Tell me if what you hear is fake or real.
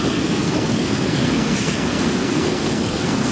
fake